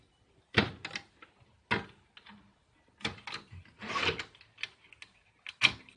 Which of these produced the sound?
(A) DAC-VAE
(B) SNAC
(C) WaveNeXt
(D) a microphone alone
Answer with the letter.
D